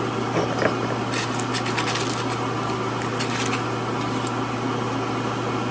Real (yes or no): yes